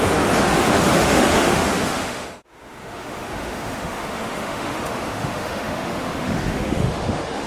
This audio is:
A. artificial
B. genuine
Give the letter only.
A